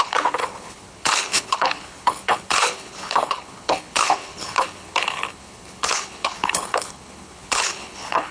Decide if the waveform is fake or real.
fake